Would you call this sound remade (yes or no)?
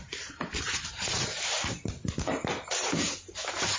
yes